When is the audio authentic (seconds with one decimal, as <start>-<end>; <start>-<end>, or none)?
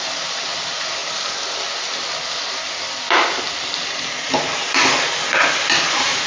0.0-6.3